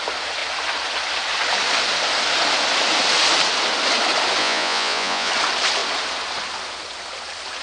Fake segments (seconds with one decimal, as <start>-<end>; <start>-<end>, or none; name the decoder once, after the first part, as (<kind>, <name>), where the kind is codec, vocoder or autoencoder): 4.4-5.3 (vocoder, Vocos)